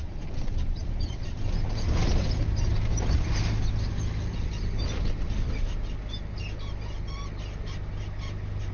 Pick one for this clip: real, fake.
real